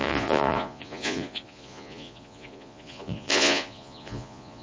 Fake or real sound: fake